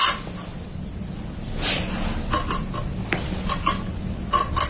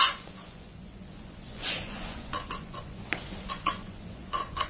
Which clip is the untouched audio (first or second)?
first